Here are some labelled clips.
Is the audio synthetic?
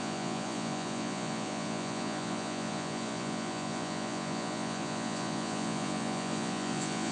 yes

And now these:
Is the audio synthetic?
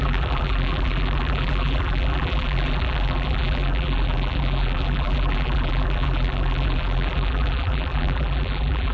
yes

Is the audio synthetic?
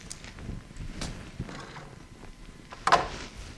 no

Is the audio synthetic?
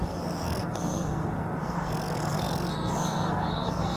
yes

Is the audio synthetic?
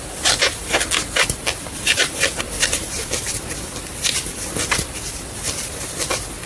yes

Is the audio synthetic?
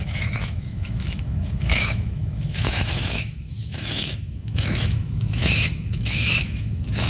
yes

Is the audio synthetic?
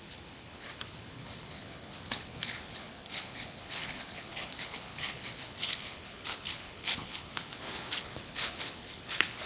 yes